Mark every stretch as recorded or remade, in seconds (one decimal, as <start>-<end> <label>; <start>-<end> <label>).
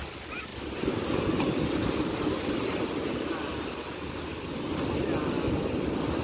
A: 0.0-6.2 recorded